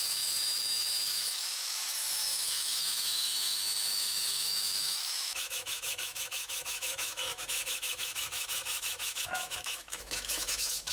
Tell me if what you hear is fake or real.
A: fake